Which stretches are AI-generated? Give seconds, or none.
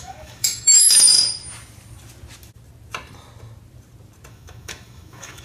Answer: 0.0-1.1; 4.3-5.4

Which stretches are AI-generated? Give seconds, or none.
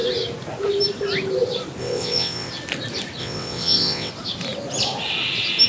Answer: 1.8-2.5; 3.2-4.1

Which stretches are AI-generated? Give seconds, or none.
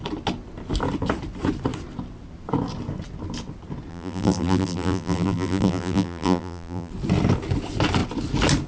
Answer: 3.9-6.9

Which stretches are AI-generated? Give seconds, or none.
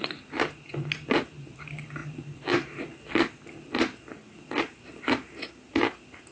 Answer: none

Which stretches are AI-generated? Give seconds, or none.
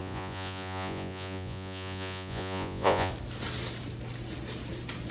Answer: 0.0-3.1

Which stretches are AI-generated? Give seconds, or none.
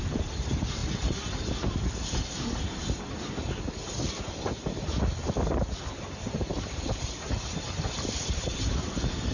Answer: 0.0-0.8; 5.9-9.3